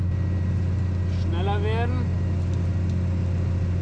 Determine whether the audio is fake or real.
real